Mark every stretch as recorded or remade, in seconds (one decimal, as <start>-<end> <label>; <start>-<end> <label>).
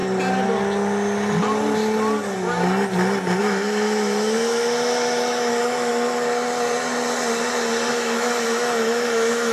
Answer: 0.0-3.4 recorded; 3.4-5.9 remade; 5.9-7.9 recorded; 7.9-9.5 remade